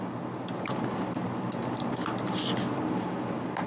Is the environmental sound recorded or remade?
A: recorded